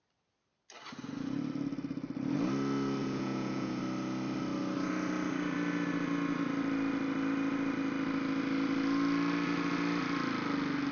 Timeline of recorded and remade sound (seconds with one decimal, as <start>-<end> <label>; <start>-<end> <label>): 0.0-3.0 recorded; 3.0-3.8 remade; 3.8-10.9 recorded